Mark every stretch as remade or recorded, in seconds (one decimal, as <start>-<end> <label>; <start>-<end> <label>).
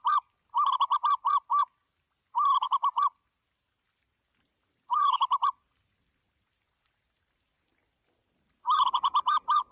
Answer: 0.0-1.3 recorded; 1.3-5.4 remade; 5.4-8.2 recorded; 8.2-9.7 remade